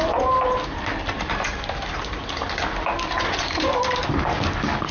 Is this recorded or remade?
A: recorded